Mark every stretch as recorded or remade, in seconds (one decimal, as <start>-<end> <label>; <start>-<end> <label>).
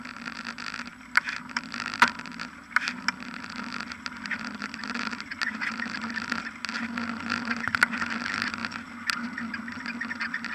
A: 0.0-10.5 recorded